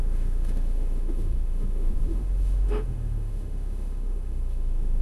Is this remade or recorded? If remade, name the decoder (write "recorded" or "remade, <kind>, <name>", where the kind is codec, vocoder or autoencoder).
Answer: remade, autoencoder, DAC-VAE